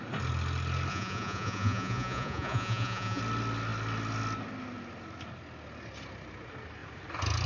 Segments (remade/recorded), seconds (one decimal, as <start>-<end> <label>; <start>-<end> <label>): 0.0-0.9 recorded; 0.9-3.2 remade; 3.2-7.5 recorded